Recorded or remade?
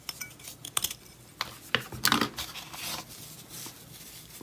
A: recorded